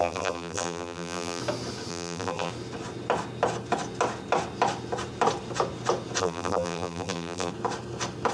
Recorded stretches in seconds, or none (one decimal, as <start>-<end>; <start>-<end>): 1.4-1.9; 2.5-6.2; 7.5-8.3